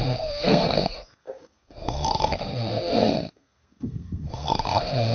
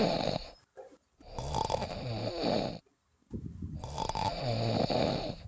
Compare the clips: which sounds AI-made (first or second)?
first